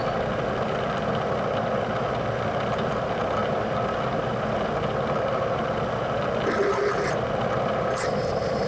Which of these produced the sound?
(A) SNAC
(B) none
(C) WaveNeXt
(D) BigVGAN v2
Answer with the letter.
B